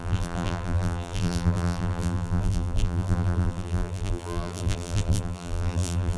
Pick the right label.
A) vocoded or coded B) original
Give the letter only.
A